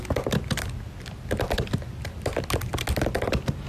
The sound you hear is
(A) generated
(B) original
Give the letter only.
B